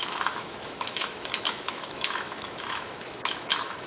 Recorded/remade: remade